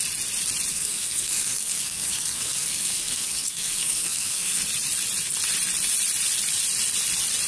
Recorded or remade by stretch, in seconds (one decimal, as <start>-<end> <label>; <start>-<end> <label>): 0.0-0.7 recorded; 0.7-4.6 remade; 4.6-7.5 recorded

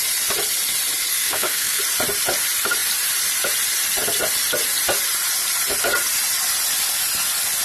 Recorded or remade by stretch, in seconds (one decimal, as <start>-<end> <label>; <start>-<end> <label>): 0.0-1.1 recorded; 1.1-1.8 remade; 1.8-7.6 recorded

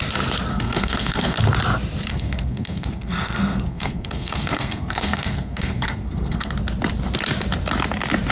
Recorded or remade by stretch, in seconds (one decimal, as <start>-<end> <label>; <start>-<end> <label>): 0.0-0.5 recorded; 0.5-1.4 remade; 1.4-2.1 recorded; 2.1-6.5 remade; 6.5-8.3 recorded

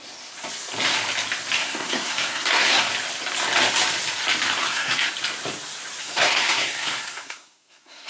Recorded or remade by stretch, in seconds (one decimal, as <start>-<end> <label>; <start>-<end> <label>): 0.0-1.6 recorded; 1.6-2.9 remade; 2.9-4.6 recorded; 4.6-5.1 remade; 5.1-6.0 recorded; 6.0-8.1 remade

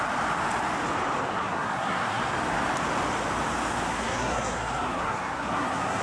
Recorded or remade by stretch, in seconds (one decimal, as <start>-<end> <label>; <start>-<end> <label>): 0.0-1.3 recorded; 1.3-2.2 remade; 2.2-3.9 recorded; 3.9-6.0 remade

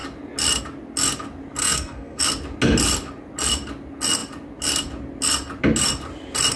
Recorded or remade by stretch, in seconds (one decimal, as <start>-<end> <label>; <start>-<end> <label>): 0.0-1.6 recorded; 1.6-2.2 remade; 2.2-6.6 recorded

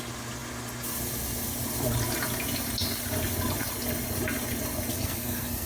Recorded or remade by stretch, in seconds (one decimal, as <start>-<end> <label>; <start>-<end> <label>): 0.0-4.9 recorded; 4.9-5.7 remade

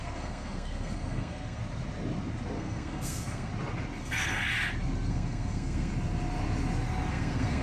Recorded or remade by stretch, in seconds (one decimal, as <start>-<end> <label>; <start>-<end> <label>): 0.0-1.6 remade; 1.6-2.6 recorded; 2.6-3.5 remade; 3.5-4.0 recorded; 4.0-4.5 remade; 4.5-5.1 recorded; 5.1-5.9 remade; 5.9-7.1 recorded; 7.1-7.6 remade